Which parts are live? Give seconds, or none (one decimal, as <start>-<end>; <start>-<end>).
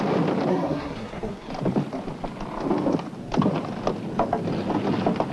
0.0-0.5; 1.5-5.3